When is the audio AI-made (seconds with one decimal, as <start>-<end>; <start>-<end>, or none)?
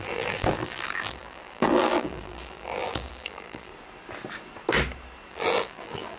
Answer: 0.0-3.7; 5.3-6.2